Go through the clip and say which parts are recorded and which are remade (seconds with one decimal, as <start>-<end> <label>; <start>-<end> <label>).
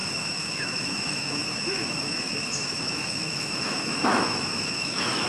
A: 0.0-5.3 remade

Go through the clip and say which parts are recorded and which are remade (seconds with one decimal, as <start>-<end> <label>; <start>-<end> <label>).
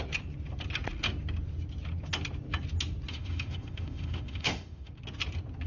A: 0.0-3.1 recorded; 3.1-4.9 remade; 4.9-5.7 recorded